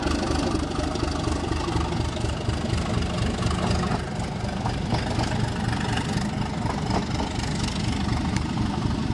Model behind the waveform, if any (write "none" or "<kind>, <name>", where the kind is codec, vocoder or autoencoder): none